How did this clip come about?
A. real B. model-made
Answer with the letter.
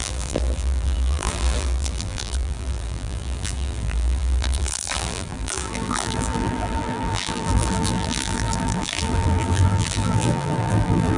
B